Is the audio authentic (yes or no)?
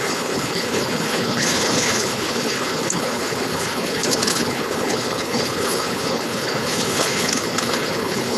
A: no